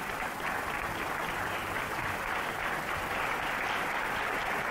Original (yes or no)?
yes